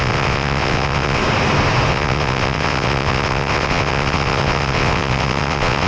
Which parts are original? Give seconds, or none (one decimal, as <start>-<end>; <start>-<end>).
1.2-1.9